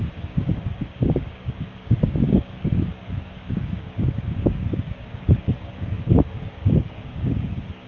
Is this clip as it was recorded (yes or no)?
no